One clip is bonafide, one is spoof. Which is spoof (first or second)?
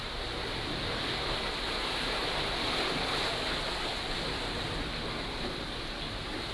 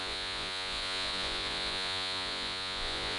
second